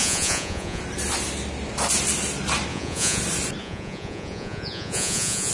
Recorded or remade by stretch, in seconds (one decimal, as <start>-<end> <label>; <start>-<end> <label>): 0.0-0.8 remade; 0.8-2.7 recorded; 2.7-3.2 remade; 3.2-3.6 recorded; 3.6-5.5 remade